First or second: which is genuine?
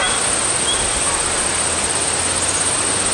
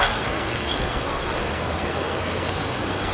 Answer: first